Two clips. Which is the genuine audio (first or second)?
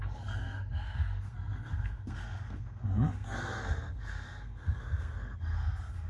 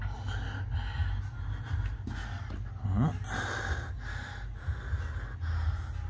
second